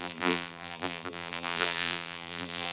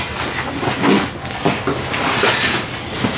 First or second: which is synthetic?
first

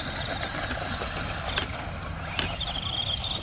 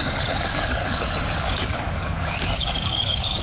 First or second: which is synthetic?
second